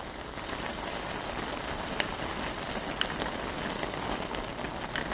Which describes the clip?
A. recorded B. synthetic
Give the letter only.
A